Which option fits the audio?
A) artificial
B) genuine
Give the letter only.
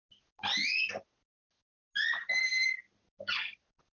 B